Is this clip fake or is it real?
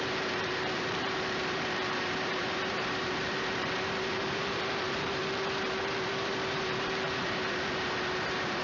fake